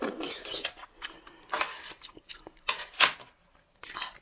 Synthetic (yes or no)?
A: no